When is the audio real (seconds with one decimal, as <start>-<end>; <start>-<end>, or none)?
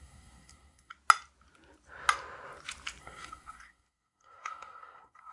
0.9-3.0